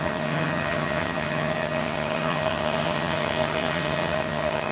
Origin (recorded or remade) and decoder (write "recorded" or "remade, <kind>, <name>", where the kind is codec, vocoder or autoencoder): remade, vocoder, HiFi-GAN